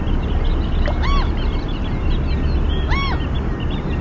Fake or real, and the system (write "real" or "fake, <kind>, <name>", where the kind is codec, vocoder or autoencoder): real